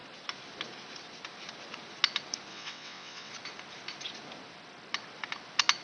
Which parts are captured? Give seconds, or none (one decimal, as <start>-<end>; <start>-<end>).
0.0-2.5; 3.3-5.8